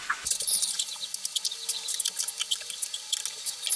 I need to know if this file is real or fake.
real